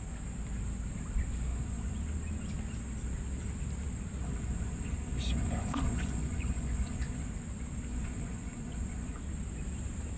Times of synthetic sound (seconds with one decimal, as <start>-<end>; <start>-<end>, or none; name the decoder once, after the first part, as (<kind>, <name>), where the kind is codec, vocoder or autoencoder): 1.5-2.0 (vocoder, Vocos); 4.2-7.3; 7.9-9.2